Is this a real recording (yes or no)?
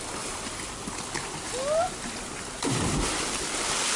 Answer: yes